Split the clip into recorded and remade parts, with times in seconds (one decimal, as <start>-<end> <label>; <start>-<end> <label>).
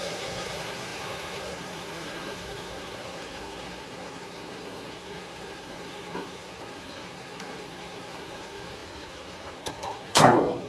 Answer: 0.0-10.7 remade